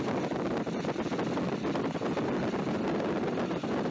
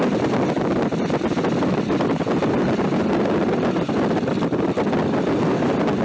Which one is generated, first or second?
second